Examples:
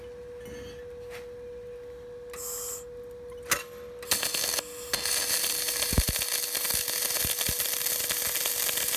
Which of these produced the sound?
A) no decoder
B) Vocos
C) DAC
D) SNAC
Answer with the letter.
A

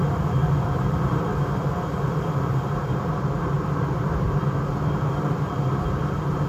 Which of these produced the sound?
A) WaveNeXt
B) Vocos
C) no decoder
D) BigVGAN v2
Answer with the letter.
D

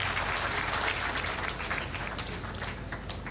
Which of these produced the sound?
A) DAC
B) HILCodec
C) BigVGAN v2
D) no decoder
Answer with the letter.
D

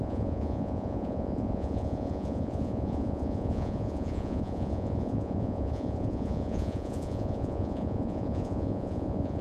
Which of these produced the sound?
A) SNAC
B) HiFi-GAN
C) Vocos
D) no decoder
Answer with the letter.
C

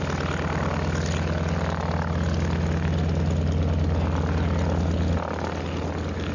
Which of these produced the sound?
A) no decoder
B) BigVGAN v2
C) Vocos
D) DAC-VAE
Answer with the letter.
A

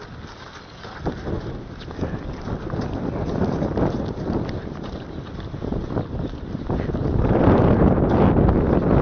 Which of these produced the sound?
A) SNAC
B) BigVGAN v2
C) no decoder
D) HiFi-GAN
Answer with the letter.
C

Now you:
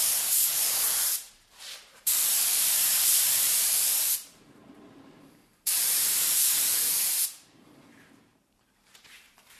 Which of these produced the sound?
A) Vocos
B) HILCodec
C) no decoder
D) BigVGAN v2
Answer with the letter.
D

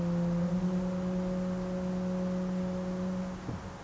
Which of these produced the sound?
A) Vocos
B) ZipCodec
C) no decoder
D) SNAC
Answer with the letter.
C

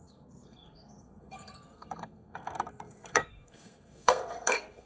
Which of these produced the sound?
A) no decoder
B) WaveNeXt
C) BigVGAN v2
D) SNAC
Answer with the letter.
D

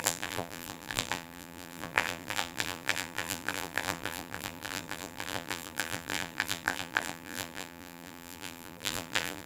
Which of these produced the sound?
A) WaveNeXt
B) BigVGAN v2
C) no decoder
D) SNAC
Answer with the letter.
B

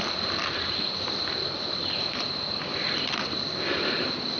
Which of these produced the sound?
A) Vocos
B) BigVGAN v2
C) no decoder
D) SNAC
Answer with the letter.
B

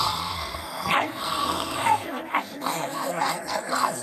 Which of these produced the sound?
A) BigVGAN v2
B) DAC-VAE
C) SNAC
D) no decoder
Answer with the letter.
C